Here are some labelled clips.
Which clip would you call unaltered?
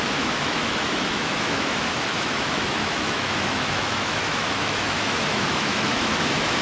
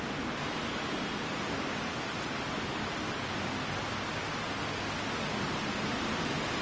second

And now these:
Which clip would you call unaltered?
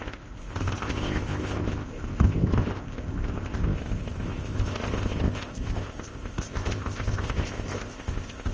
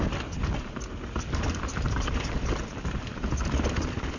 second